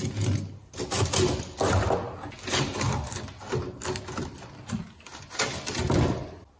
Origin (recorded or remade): recorded